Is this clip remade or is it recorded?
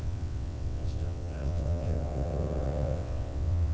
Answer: remade